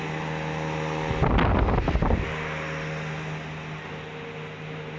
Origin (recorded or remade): recorded